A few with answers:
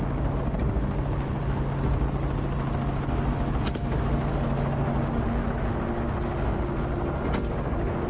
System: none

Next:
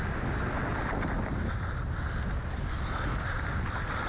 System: none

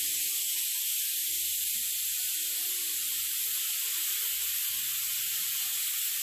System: none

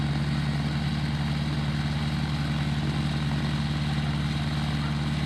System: none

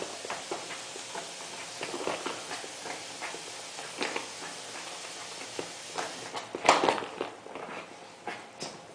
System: none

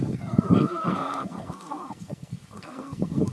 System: codec, SNAC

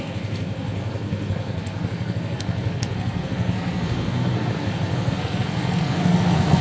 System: codec, SNAC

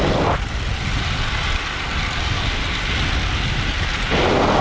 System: none